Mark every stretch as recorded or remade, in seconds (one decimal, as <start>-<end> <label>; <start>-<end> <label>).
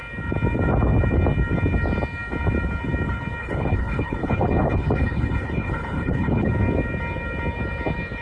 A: 0.0-3.4 recorded; 3.4-6.5 remade; 6.5-8.2 recorded